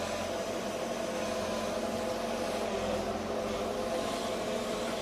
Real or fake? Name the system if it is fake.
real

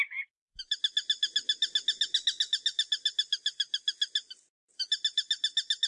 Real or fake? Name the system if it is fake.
real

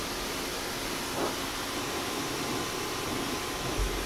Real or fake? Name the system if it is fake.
real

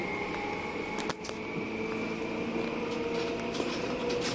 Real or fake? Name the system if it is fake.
real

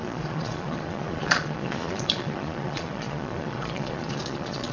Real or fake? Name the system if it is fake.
fake, vocoder, Vocos